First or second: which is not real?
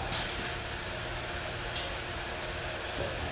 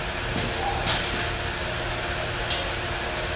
first